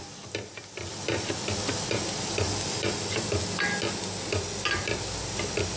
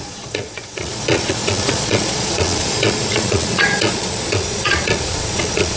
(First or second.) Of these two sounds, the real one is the first